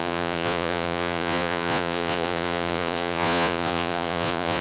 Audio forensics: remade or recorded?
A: remade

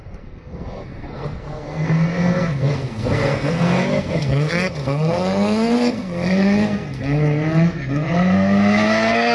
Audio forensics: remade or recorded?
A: remade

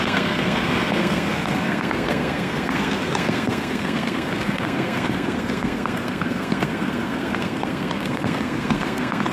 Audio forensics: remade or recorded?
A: remade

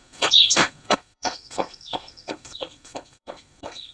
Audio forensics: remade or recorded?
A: remade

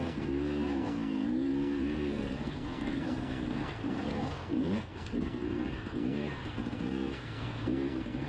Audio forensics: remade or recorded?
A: remade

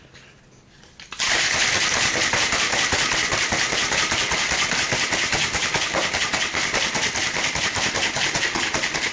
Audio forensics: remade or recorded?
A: recorded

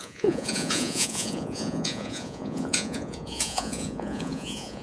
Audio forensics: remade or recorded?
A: remade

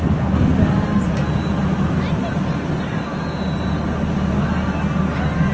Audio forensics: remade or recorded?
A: recorded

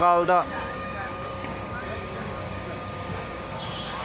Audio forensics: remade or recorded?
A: remade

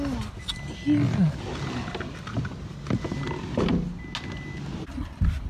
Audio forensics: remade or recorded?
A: recorded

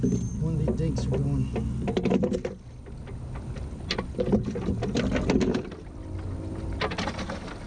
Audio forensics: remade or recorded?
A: recorded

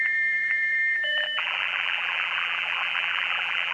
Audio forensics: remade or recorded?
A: remade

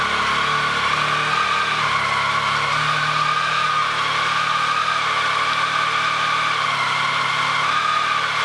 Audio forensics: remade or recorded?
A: recorded